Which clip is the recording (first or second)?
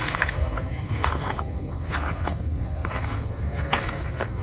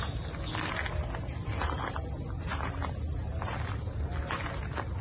second